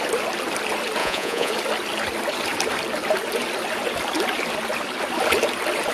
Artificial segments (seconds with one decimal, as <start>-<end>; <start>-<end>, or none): 1.0-1.5